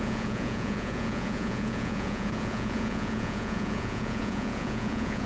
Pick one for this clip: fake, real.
fake